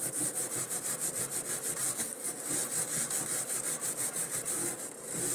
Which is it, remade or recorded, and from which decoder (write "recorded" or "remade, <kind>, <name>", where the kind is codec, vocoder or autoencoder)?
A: recorded